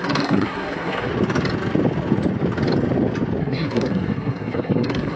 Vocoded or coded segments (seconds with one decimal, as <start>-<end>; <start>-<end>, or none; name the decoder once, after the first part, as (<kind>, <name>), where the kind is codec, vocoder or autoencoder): 0.0-1.1 (codec, SNAC); 3.4-5.2

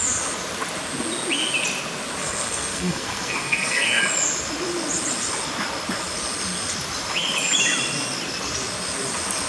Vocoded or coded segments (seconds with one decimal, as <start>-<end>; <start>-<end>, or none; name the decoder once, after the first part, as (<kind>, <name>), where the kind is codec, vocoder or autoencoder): 2.2-4.0 (codec, SNAC)

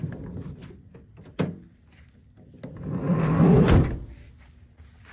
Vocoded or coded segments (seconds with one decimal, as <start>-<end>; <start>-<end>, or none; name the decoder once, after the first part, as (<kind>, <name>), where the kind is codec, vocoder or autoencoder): none

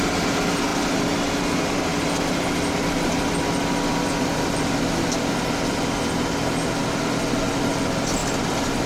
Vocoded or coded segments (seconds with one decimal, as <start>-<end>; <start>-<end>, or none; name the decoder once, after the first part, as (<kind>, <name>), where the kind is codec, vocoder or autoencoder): none